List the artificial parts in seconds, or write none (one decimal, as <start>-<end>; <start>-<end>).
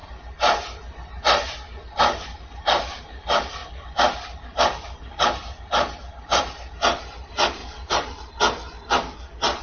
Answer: 7.6-8.4